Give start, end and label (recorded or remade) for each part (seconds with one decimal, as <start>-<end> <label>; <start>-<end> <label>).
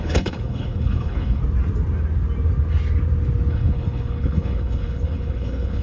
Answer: 0.0-1.4 remade; 1.4-3.5 recorded; 3.5-5.8 remade